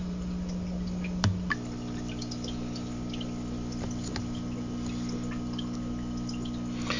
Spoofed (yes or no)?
no